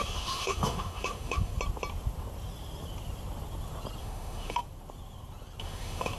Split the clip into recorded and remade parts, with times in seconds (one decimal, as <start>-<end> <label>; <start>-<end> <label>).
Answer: 0.0-1.5 remade; 1.5-4.0 recorded; 4.0-4.6 remade; 4.6-5.6 recorded; 5.6-6.2 remade